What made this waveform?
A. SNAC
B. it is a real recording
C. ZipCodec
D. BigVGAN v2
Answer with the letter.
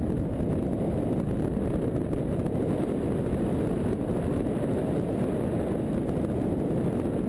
B